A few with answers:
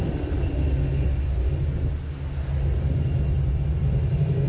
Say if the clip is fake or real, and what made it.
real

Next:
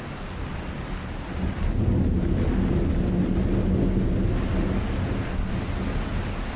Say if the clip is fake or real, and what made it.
real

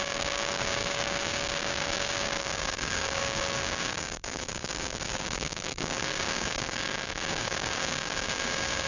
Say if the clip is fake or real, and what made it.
fake, codec, DAC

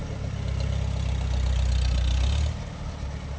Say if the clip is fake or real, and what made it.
real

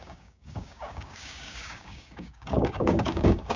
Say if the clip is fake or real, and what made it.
fake, codec, DAC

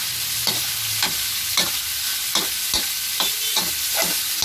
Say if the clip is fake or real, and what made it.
real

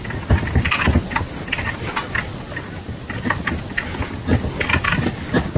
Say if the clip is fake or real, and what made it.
real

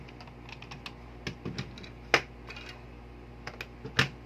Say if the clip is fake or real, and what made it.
real